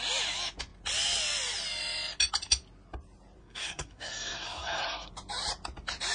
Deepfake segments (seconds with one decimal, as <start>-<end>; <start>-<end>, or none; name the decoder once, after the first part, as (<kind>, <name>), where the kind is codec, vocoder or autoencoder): 3.4-5.1 (codec, SNAC)